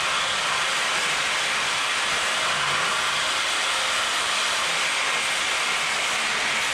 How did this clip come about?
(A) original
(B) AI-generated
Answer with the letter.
B